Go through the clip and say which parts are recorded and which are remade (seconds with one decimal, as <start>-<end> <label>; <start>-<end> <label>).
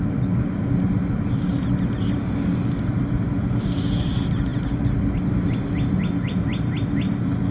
0.0-7.5 recorded